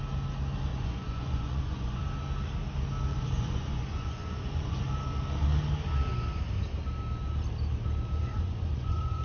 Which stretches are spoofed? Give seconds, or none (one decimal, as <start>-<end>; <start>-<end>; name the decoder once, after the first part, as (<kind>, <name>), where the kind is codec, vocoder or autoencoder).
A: 0.7-2.0 (vocoder, Vocos); 3.1-4.8; 8.2-9.2